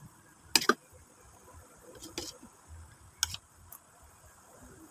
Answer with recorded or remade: recorded